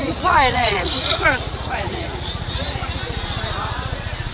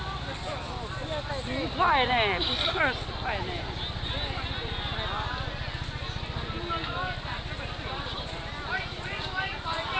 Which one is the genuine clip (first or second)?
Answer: second